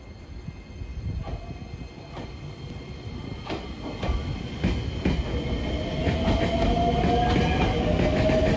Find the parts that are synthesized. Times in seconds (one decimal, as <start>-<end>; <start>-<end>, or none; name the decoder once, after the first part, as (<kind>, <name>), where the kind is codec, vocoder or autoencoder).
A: none